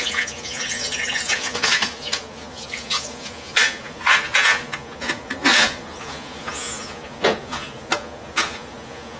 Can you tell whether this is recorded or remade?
remade